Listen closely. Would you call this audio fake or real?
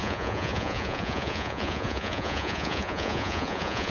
fake